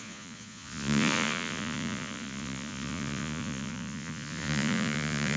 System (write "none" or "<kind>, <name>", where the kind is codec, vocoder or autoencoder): vocoder, Vocos